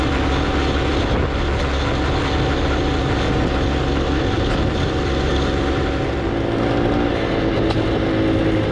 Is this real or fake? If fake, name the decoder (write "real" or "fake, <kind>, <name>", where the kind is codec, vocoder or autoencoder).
real